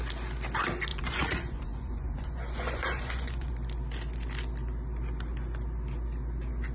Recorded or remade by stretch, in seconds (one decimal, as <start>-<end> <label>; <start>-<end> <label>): 0.0-0.9 recorded; 0.9-3.5 remade; 3.5-6.7 recorded